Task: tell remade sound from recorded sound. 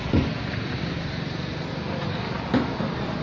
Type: recorded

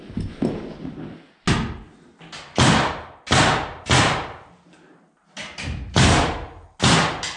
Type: recorded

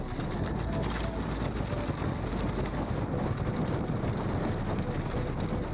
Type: recorded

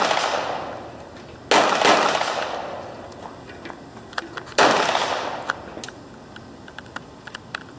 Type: recorded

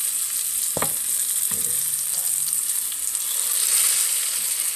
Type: recorded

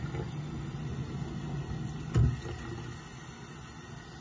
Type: recorded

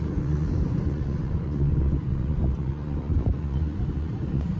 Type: remade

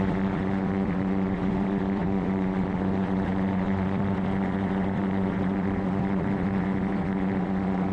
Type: remade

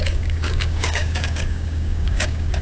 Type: remade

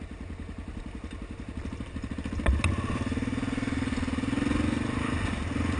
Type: recorded